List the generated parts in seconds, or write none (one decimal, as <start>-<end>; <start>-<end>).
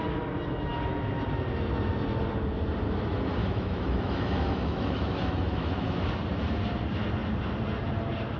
3.4-6.1